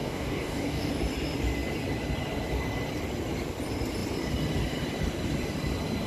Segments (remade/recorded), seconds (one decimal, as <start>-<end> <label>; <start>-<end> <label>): 0.0-0.9 remade; 0.9-6.1 recorded